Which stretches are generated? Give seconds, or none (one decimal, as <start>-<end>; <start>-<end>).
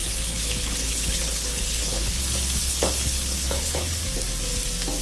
0.0-2.2; 2.6-4.0